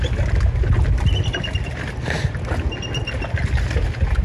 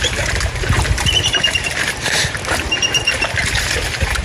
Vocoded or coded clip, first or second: second